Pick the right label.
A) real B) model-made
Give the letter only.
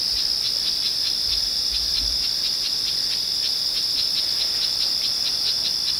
B